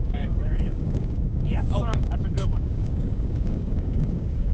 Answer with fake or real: fake